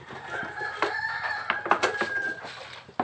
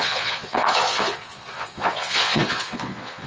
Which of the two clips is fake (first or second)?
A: second